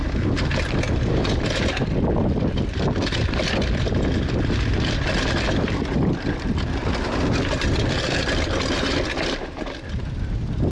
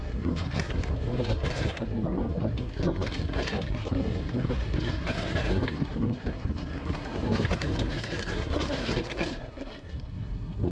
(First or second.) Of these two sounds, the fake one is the second